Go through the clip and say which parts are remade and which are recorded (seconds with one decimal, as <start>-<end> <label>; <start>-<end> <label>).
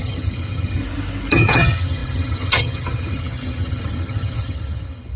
0.0-0.8 remade; 0.8-1.3 recorded; 1.3-5.2 remade